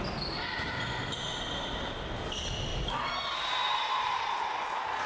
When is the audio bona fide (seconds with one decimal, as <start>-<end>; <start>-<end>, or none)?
0.0-2.7; 4.3-5.1